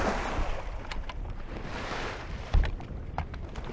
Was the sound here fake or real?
real